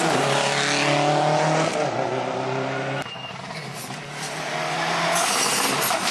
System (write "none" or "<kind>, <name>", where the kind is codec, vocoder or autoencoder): none